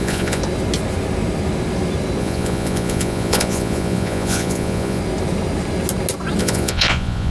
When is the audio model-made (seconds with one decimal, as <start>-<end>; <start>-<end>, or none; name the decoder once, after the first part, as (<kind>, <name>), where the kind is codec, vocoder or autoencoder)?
0.0-0.4 (vocoder, Vocos); 2.2-5.0; 6.4-7.3